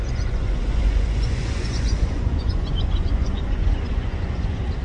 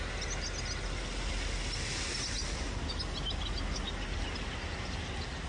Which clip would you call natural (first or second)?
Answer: second